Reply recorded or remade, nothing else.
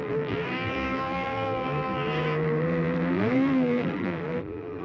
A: remade